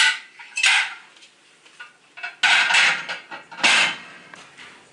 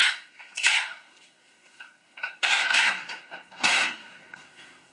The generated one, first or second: second